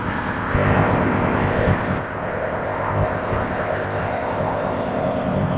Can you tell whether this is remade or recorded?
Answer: remade